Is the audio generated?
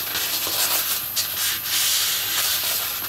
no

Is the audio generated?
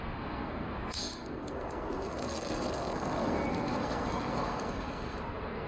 yes